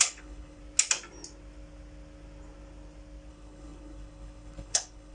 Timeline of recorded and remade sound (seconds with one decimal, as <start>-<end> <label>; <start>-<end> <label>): 0.0-0.6 remade; 0.6-3.3 recorded; 3.3-5.1 remade